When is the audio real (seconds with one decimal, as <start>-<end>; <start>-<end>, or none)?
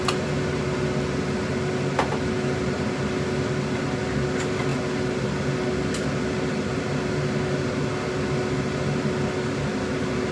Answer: 0.0-10.3